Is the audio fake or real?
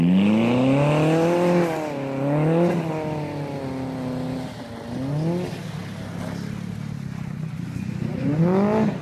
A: real